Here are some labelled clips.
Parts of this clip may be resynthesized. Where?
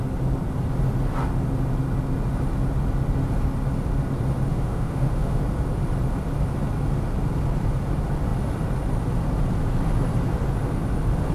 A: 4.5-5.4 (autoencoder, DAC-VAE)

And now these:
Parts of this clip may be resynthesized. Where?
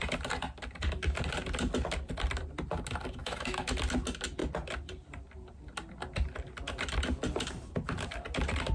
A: 3.2-3.7 (autoencoder, DAC-VAE)